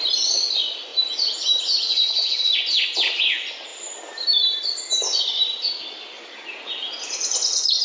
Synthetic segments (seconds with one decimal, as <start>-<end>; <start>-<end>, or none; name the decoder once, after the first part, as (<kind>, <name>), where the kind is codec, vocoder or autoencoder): none